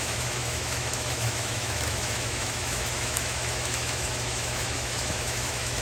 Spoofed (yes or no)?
yes